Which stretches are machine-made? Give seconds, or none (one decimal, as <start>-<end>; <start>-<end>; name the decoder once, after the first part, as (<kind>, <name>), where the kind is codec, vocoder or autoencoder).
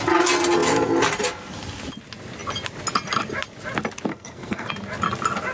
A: 4.1-4.7 (codec, SNAC)